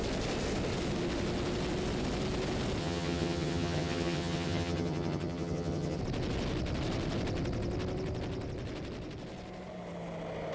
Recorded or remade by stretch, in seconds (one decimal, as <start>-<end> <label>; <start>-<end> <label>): 0.0-2.8 recorded; 2.8-6.0 remade; 6.0-10.5 recorded